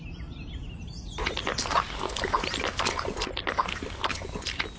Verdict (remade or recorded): recorded